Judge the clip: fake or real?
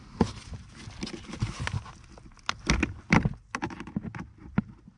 real